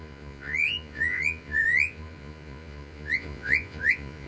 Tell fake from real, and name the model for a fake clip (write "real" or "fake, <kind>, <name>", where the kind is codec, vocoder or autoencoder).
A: fake, vocoder, Vocos